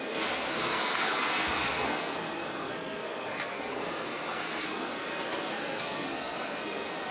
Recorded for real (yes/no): no